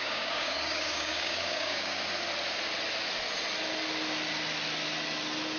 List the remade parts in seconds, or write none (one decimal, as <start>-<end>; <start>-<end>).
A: 0.0-2.0